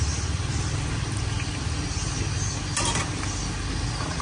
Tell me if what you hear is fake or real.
real